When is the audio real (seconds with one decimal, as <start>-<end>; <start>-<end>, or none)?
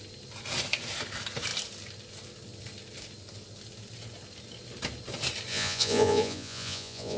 0.0-5.5